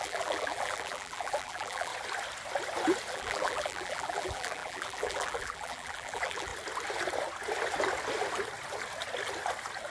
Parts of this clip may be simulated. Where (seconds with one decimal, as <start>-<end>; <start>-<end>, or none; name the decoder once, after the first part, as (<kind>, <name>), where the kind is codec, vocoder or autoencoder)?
0.0-1.9 (vocoder, BigVGAN v2); 3.1-6.5